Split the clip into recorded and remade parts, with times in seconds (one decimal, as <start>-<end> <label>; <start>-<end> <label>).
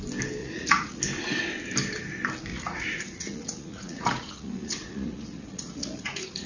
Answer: 0.0-0.4 recorded; 0.4-1.0 remade; 1.0-2.5 recorded; 2.5-6.5 remade